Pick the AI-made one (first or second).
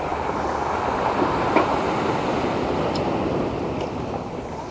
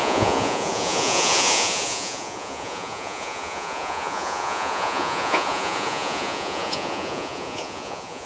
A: second